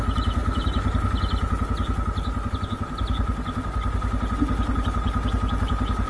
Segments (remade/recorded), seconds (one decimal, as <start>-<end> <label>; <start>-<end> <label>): 0.0-6.1 recorded